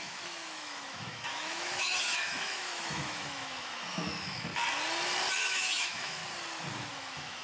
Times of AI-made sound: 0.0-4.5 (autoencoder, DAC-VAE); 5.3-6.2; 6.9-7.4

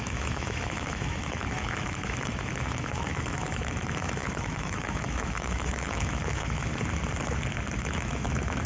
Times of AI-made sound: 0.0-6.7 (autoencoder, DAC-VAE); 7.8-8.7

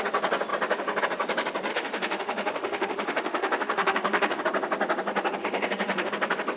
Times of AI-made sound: 1.7-4.4 (autoencoder, DAC-VAE); 5.4-6.1

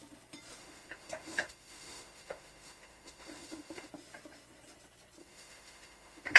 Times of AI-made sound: 0.6-3.9 (autoencoder, DAC-VAE); 5.2-6.4